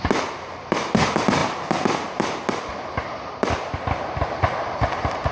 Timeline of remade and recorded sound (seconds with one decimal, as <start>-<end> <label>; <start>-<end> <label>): 0.0-5.3 recorded